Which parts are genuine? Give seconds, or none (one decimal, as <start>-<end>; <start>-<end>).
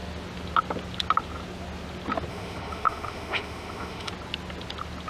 0.0-2.3; 4.1-5.1